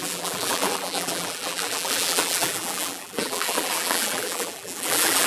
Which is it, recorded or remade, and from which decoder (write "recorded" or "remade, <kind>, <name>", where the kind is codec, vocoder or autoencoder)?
remade, vocoder, BigVGAN v2